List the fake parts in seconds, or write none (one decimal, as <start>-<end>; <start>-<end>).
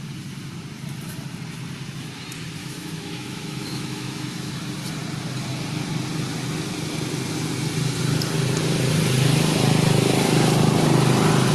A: 2.6-4.5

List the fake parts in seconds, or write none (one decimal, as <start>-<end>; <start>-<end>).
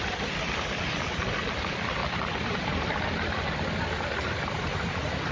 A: 2.0-2.9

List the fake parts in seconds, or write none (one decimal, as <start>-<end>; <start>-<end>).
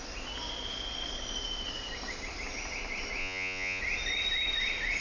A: 3.2-3.8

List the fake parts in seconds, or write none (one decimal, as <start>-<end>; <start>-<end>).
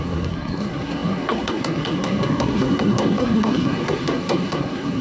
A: 0.0-5.0